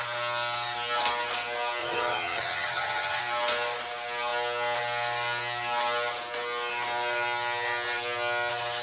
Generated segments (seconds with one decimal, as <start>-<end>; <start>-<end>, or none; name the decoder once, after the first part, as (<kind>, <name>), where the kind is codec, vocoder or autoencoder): 1.8-3.2 (vocoder, HiFi-GAN)